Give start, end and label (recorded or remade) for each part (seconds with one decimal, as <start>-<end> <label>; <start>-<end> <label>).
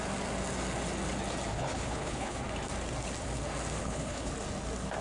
0.0-1.5 recorded; 1.5-2.4 remade; 2.4-3.8 recorded; 3.8-4.3 remade; 4.3-5.0 recorded